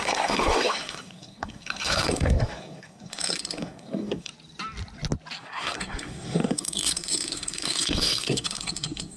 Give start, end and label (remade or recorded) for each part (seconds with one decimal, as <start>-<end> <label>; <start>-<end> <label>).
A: 0.0-4.3 remade; 4.3-5.4 recorded; 5.4-9.2 remade